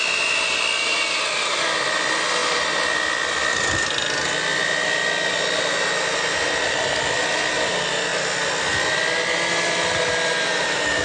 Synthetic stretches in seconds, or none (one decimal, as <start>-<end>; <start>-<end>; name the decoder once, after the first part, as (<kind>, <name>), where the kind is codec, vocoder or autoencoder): none

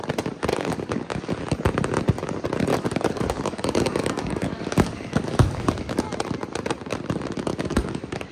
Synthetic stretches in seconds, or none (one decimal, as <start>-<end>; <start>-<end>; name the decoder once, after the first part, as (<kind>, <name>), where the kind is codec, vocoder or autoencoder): 0.5-1.2 (codec, DAC); 2.7-6.0; 7.5-8.3

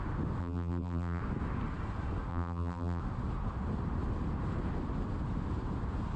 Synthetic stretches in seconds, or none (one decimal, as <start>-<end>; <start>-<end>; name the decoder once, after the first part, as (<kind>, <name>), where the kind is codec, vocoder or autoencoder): 0.4-1.2 (vocoder, BigVGAN v2); 2.3-3.0

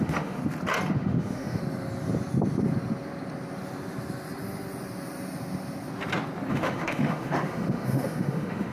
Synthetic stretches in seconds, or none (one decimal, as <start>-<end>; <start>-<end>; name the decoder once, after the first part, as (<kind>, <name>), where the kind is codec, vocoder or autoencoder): 0.0-0.4 (autoencoder, DAC-VAE); 0.9-1.6; 6.5-8.7

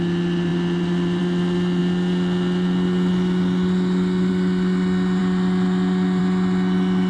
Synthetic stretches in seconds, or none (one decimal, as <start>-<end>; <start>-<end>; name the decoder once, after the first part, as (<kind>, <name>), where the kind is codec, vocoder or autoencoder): none

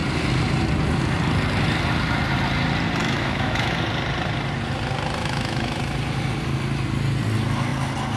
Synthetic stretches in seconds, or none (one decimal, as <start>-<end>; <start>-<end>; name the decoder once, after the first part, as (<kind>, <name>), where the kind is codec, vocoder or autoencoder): 3.0-3.7 (autoencoder, DAC-VAE); 5.2-5.8

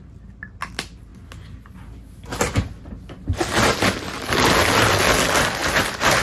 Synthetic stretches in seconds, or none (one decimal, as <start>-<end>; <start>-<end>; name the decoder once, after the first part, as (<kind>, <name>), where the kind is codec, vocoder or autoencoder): 5.6-6.2 (vocoder, BigVGAN v2)

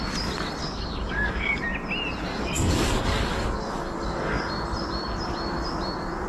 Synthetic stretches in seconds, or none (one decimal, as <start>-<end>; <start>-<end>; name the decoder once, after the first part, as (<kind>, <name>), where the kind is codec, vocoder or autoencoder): 0.6-1.6 (codec, DAC); 2.3-4.5